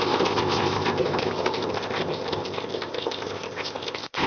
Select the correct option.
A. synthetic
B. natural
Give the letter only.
A